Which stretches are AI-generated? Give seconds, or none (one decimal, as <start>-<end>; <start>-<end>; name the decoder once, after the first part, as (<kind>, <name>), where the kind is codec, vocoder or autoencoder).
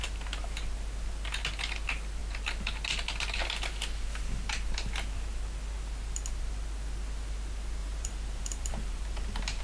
7.8-9.6 (vocoder, BigVGAN v2)